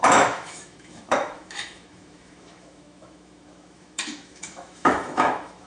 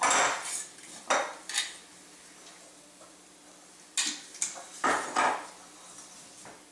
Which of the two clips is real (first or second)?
second